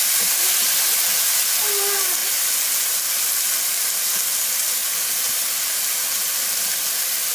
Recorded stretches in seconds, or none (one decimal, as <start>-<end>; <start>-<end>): 0.0-7.3